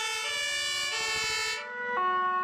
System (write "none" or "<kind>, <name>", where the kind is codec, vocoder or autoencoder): none